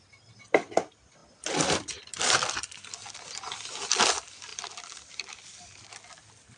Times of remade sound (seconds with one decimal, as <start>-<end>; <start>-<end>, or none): 4.5-5.8